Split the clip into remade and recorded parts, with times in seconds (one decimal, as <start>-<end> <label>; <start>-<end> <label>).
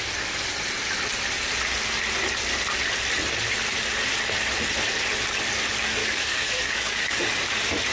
0.0-6.0 recorded; 6.0-7.2 remade; 7.2-7.9 recorded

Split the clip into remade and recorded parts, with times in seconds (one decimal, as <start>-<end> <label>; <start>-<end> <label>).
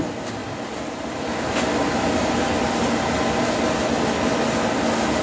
0.0-5.2 recorded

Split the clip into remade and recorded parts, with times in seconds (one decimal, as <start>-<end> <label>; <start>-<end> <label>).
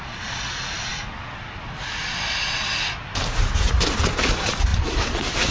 0.0-5.5 recorded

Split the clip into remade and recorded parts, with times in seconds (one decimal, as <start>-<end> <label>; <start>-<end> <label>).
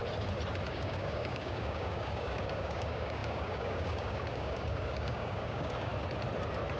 0.0-0.7 recorded; 0.7-5.9 remade; 5.9-6.8 recorded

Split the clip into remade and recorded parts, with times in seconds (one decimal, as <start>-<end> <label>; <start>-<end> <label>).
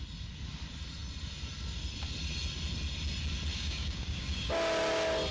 0.0-3.5 recorded; 3.5-4.5 remade; 4.5-5.3 recorded